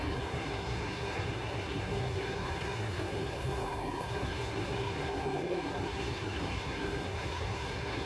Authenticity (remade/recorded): remade